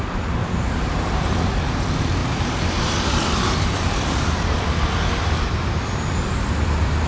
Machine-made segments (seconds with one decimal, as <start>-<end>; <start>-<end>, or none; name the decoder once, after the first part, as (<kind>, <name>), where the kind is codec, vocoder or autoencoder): 0.4-1.3 (vocoder, BigVGAN v2); 2.2-2.9